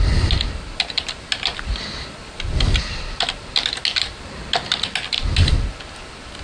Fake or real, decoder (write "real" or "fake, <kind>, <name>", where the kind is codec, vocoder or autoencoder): real